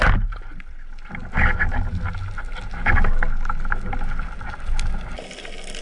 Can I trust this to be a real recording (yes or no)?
yes